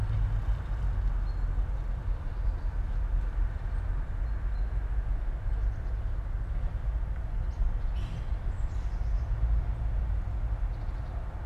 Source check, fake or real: real